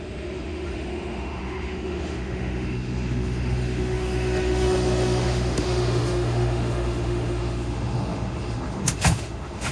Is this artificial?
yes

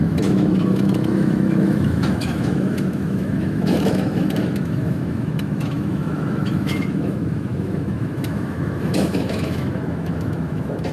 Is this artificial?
yes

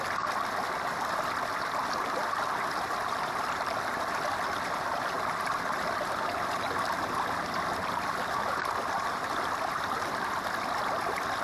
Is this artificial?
no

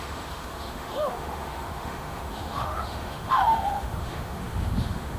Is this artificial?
yes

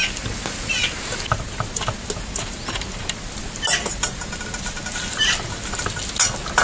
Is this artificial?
no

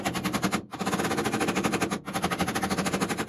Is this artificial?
no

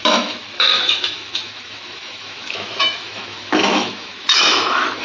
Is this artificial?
yes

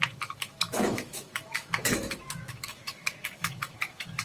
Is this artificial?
yes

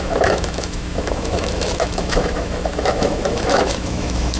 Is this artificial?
yes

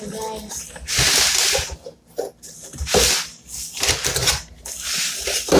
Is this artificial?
no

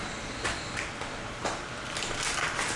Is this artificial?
no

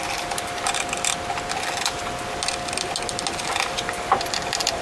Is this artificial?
no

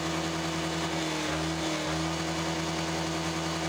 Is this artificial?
no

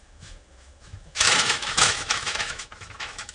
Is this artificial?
yes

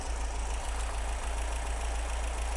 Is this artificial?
no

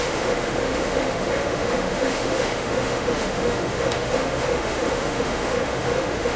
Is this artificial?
yes